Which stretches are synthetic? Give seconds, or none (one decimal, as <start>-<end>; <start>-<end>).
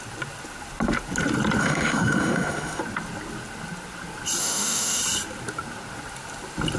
1.6-2.8; 4.4-5.0